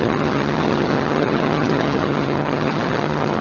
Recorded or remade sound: remade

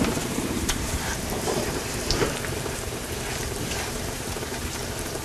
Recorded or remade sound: remade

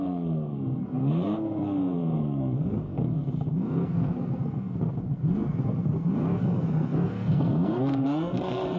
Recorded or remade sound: remade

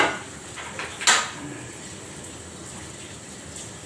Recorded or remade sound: recorded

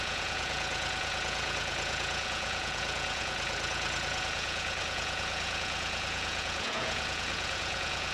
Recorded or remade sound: remade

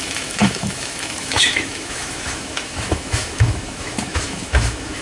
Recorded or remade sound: remade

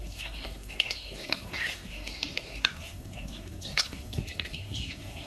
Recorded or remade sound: remade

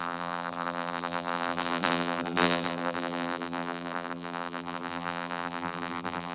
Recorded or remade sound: remade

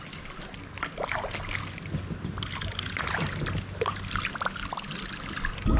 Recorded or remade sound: recorded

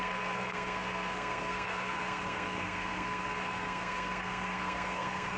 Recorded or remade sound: remade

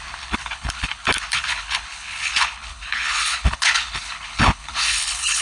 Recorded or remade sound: remade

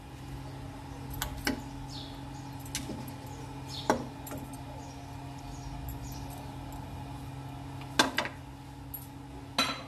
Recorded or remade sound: recorded